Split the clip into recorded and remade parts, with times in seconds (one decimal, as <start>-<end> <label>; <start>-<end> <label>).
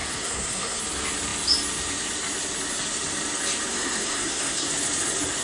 0.0-0.8 remade; 0.8-3.7 recorded; 3.7-4.7 remade; 4.7-5.4 recorded